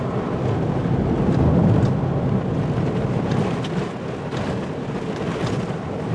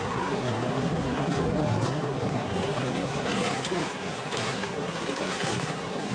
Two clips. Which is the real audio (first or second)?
first